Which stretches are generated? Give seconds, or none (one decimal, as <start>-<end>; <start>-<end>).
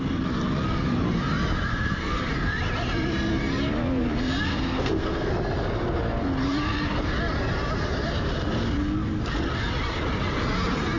1.7-2.3; 4.5-5.3